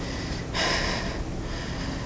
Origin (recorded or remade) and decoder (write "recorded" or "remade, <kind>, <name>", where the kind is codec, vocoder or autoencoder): recorded